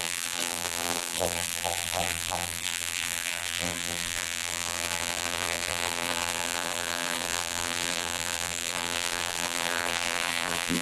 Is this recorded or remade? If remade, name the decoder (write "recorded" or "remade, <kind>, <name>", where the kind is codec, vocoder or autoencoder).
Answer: remade, vocoder, BigVGAN v2